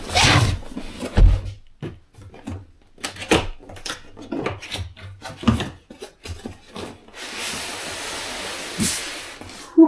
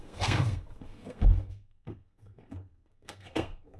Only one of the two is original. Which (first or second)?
first